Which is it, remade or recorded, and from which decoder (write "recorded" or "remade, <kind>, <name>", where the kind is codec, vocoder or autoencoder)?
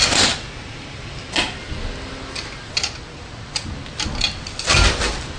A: recorded